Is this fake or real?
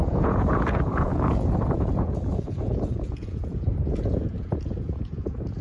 fake